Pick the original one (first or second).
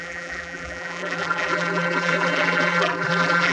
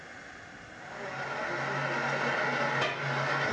second